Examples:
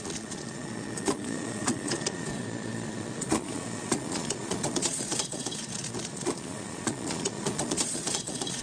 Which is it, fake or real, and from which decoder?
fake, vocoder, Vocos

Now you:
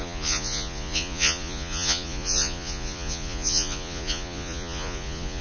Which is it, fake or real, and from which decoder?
fake, vocoder, Vocos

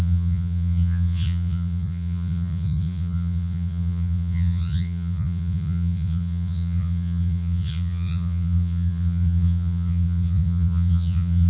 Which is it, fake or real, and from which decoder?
fake, vocoder, Vocos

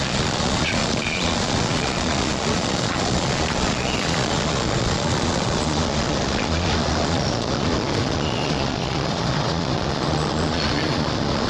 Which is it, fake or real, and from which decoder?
fake, vocoder, Vocos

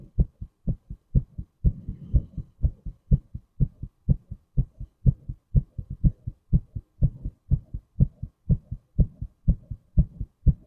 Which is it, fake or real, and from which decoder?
real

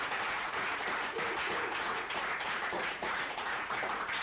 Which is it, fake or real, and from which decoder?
fake, vocoder, Vocos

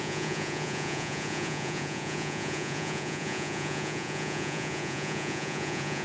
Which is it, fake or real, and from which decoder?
fake, vocoder, Vocos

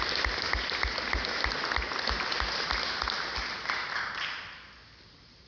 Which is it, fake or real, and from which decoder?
real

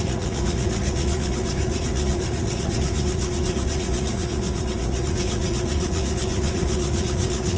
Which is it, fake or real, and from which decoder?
fake, vocoder, Vocos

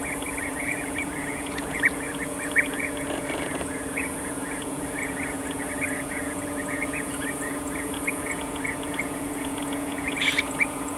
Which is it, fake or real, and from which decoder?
fake, vocoder, Vocos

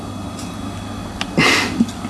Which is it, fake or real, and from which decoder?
real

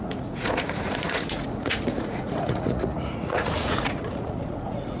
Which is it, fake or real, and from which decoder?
fake, vocoder, Vocos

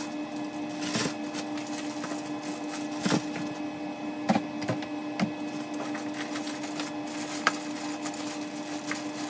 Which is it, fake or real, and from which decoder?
real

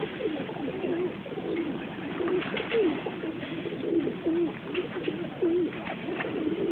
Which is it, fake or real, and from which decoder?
real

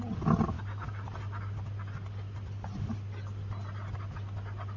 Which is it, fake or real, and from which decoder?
real